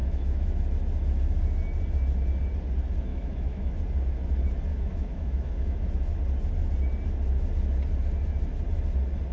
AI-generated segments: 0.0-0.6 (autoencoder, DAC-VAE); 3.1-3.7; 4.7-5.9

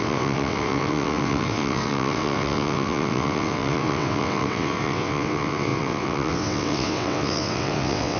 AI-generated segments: 0.0-8.2 (vocoder, WaveNeXt)

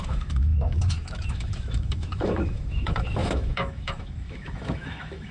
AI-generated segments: 0.0-5.3 (autoencoder, DAC-VAE)